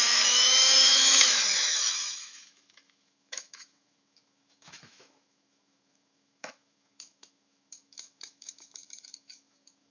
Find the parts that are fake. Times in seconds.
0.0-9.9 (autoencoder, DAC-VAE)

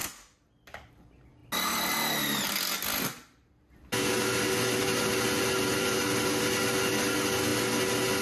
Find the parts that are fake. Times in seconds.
none

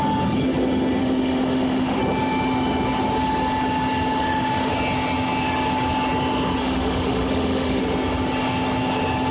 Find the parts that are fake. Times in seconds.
1.0-2.0 (autoencoder, DAC-VAE); 4.2-4.7; 6.6-7.8

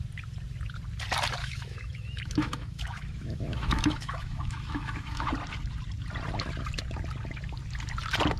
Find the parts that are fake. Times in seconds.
1.4-5.3 (autoencoder, DAC-VAE)

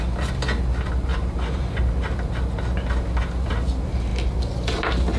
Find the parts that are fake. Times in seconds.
none

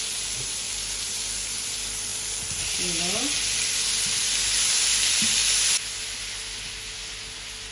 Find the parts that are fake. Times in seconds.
none

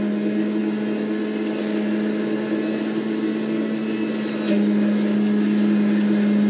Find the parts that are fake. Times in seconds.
none

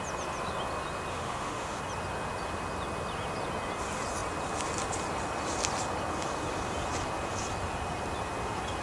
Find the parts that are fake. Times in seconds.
1.1-1.8 (autoencoder, DAC-VAE)